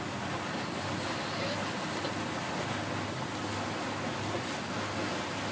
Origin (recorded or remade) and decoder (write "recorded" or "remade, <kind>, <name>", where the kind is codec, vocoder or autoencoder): recorded